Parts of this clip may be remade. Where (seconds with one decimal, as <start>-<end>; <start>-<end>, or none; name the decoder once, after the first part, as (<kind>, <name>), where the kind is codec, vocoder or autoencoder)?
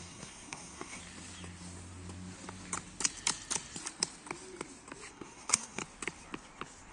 0.0-1.0 (codec, SNAC); 5.1-5.8